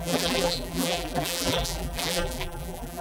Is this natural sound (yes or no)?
no